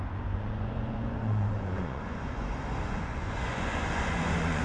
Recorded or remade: remade